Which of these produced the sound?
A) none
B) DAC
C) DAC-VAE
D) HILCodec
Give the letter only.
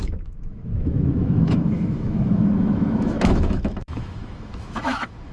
C